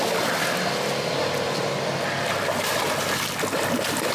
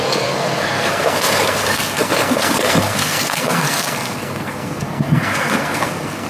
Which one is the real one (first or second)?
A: first